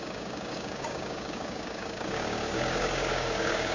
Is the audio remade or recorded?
remade